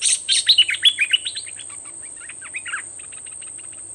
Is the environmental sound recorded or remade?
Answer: recorded